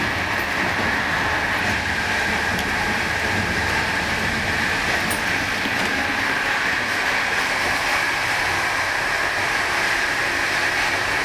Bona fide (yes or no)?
yes